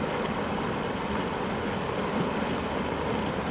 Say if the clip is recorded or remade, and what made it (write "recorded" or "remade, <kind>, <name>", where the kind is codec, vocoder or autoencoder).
recorded